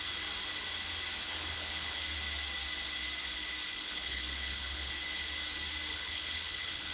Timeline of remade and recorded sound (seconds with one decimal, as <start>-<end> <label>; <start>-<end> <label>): 0.0-1.2 recorded; 1.2-2.0 remade; 2.0-3.7 recorded; 3.7-4.9 remade; 4.9-5.9 recorded; 5.9-6.9 remade